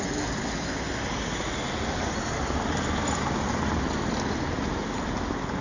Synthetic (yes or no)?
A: no